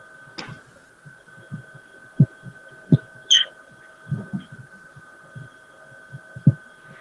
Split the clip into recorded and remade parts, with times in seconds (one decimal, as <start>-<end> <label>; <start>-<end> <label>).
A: 0.0-7.0 recorded